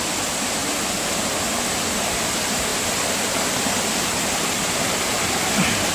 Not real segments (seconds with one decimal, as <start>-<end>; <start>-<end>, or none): none